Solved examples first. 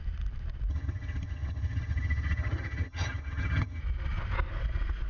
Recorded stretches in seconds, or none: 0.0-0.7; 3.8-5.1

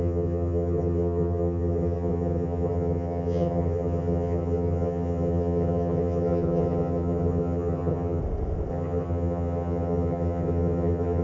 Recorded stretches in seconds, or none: 8.2-8.7